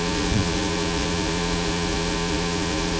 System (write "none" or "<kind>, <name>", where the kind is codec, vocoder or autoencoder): vocoder, Vocos